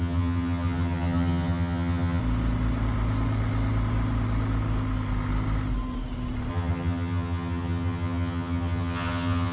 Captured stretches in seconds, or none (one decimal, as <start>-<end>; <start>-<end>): 2.2-6.5

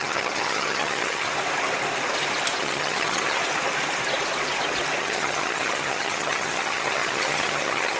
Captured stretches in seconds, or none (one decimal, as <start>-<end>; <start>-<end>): 1.3-2.6; 3.4-5.0

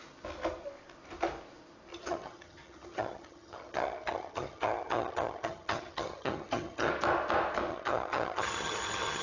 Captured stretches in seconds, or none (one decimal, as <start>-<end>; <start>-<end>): 0.0-1.9; 6.9-7.7

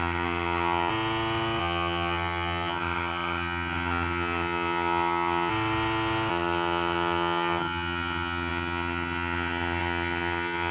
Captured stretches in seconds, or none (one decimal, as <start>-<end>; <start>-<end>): 0.9-1.6; 5.5-6.3

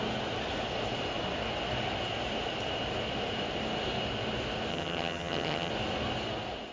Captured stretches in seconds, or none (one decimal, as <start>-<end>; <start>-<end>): 0.0-4.7; 5.7-6.7

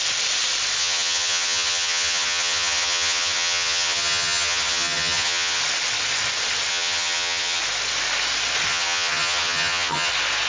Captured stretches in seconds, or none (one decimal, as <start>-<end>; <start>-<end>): 0.0-0.8; 5.6-6.7; 7.6-8.7; 10.1-10.5

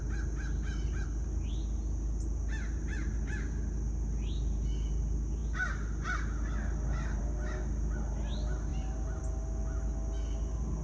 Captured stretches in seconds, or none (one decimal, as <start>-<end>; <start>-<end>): 0.0-10.8